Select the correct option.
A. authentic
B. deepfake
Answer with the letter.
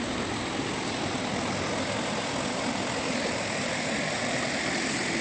A